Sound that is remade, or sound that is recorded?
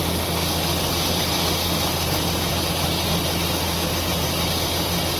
recorded